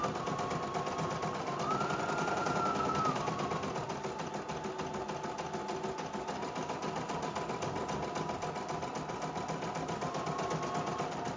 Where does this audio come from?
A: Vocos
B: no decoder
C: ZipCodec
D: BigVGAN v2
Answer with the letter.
B